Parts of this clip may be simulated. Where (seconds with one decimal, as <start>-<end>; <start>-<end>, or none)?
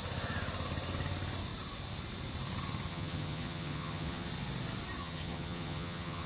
2.9-4.3; 5.0-6.3